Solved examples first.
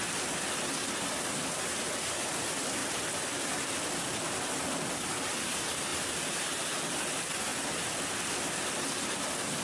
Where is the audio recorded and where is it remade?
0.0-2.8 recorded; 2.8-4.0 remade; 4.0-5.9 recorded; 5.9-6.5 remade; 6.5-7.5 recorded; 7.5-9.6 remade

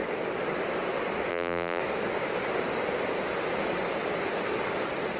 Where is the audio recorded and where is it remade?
0.0-1.3 recorded; 1.3-1.8 remade; 1.8-5.2 recorded